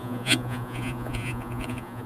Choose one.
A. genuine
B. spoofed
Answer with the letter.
B